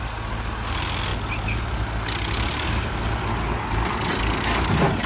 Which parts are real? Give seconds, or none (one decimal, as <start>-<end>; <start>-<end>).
0.0-5.1